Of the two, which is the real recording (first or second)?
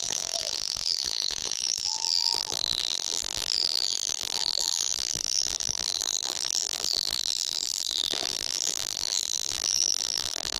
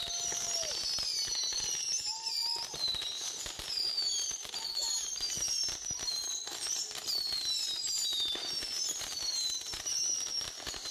second